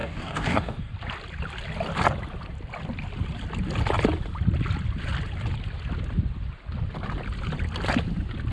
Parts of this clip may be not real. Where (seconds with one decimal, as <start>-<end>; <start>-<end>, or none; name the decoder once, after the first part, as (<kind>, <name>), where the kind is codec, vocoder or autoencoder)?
0.0-0.9 (codec, DAC)